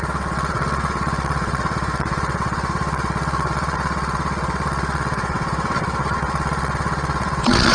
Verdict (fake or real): fake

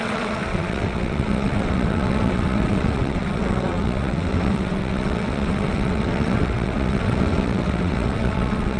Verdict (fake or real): fake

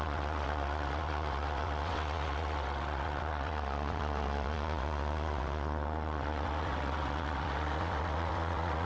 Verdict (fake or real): fake